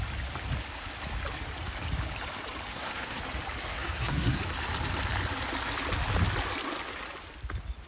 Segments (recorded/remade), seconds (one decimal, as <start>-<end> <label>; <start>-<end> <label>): 0.0-2.7 recorded; 2.7-3.2 remade; 3.2-3.7 recorded; 3.7-4.4 remade; 4.4-7.9 recorded